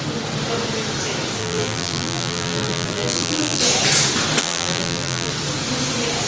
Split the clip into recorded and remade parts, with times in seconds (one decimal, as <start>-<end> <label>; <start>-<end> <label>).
0.0-1.4 recorded; 1.4-3.6 remade; 3.6-4.4 recorded; 4.4-5.3 remade; 5.3-6.3 recorded